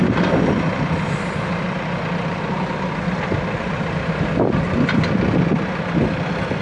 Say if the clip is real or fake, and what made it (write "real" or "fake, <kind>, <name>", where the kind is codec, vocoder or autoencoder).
real